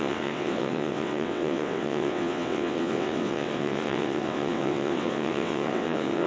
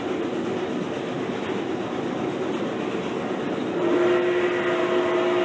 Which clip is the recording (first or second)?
second